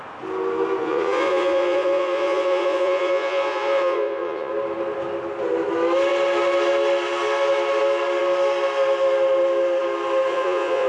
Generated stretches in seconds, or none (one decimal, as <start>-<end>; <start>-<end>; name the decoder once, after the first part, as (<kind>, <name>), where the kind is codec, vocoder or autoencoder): 0.8-4.5 (vocoder, Vocos); 10.3-10.9